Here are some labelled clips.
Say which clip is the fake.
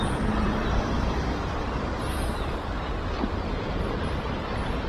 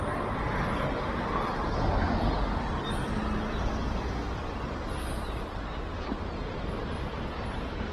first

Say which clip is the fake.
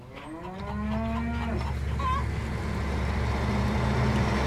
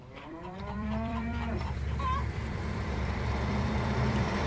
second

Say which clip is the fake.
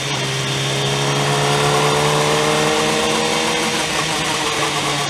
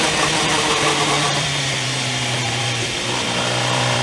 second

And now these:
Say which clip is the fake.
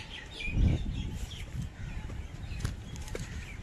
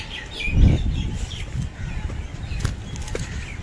first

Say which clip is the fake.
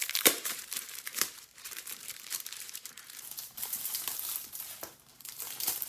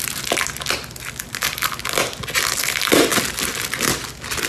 first